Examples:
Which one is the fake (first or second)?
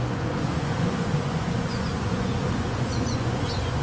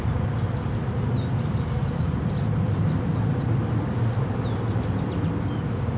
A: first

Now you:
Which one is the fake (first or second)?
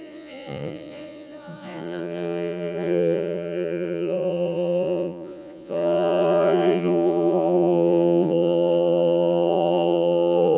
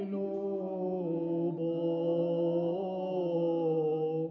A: first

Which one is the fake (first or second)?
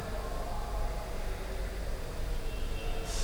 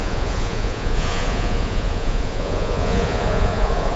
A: second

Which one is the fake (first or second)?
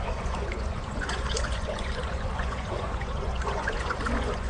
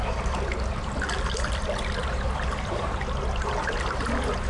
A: first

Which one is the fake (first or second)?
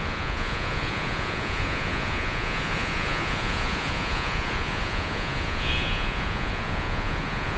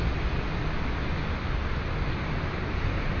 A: first